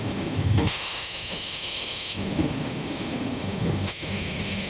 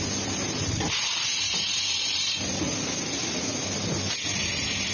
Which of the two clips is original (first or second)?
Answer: second